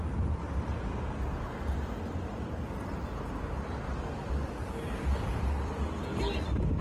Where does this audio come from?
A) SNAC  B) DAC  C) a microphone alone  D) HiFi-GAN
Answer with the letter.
C